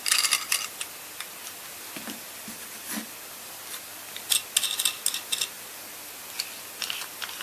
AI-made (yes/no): no